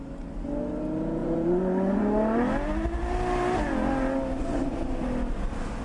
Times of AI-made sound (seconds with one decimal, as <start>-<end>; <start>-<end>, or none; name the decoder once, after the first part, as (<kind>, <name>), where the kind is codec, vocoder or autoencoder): 1.2-2.0 (vocoder, Vocos)